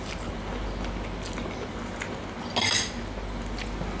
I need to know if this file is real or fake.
real